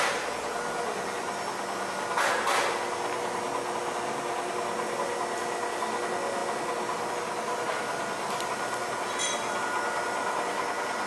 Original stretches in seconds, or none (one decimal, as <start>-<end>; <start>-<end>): 0.0-11.1